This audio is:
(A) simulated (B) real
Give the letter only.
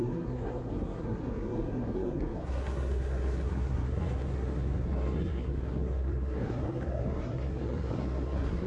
A